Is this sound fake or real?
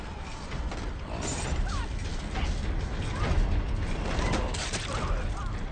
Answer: real